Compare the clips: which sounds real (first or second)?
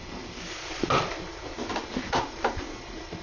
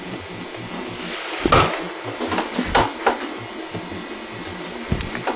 second